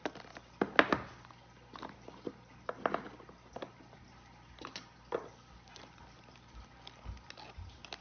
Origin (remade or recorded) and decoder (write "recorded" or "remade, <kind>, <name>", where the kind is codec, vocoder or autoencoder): recorded